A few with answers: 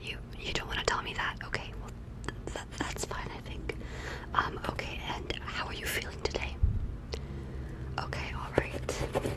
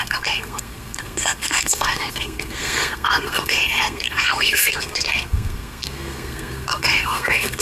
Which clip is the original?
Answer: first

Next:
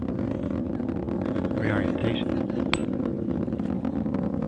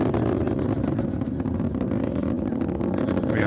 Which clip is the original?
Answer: first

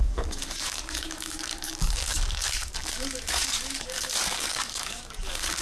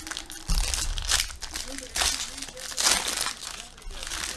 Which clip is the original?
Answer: second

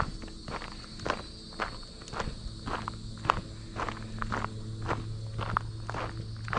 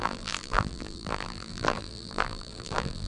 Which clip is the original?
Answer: first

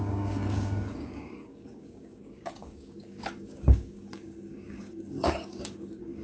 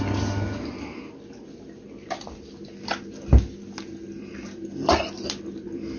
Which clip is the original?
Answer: second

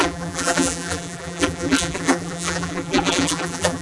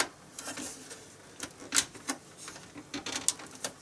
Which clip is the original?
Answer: second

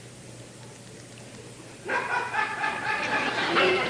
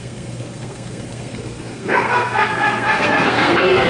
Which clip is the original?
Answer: first